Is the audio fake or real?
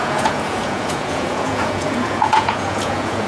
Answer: fake